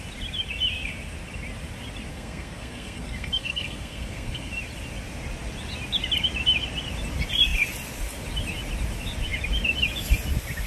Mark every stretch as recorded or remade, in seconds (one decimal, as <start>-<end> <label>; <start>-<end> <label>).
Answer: 0.0-2.1 recorded; 2.1-4.5 remade; 4.5-10.7 recorded